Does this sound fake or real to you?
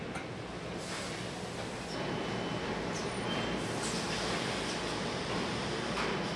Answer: real